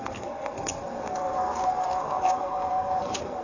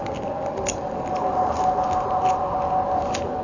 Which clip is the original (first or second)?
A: second